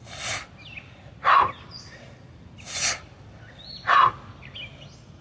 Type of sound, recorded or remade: recorded